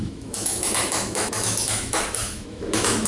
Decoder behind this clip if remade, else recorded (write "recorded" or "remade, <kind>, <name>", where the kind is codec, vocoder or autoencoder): remade, autoencoder, DAC-VAE